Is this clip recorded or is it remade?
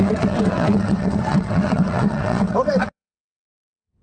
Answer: remade